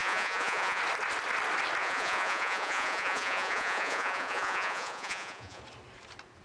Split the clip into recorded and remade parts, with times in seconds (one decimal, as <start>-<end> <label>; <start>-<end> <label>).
0.0-0.8 remade; 0.8-1.8 recorded; 1.8-5.6 remade; 5.6-6.4 recorded